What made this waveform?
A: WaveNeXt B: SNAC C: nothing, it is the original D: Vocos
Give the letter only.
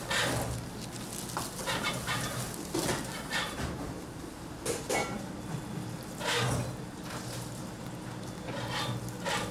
C